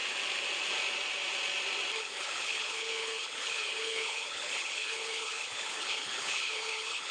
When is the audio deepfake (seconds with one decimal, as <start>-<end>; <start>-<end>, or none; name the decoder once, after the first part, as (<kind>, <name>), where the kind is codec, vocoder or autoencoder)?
2.0-7.1 (codec, HILCodec)